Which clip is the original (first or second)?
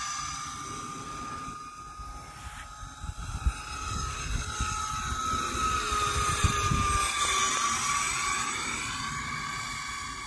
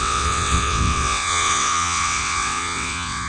first